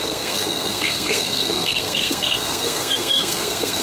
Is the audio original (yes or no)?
no